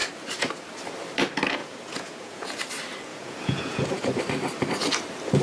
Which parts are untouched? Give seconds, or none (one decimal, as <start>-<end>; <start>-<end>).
0.0-1.6; 2.6-3.1; 4.2-5.4

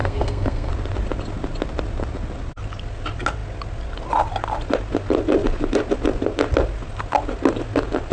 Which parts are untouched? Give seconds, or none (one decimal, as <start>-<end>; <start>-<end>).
0.7-8.1

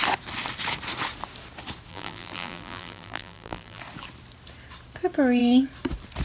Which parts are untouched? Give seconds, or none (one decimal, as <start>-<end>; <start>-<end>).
0.0-1.9; 3.8-6.2